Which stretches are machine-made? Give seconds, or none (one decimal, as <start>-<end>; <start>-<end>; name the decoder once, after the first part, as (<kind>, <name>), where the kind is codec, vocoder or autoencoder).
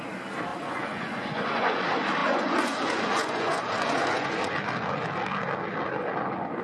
0.5-1.8 (vocoder, Vocos); 2.2-4.5